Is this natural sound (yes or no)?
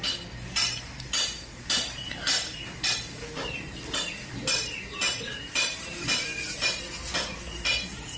yes